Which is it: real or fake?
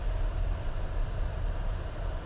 real